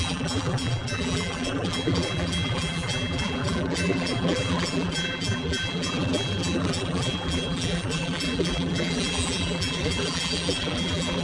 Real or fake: fake